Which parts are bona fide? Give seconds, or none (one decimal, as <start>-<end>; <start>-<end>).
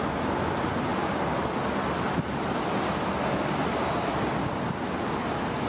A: 0.0-5.7